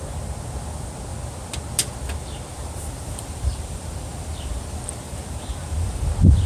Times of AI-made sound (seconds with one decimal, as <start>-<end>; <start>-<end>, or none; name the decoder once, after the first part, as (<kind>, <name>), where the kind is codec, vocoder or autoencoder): 2.5-6.1 (vocoder, BigVGAN v2)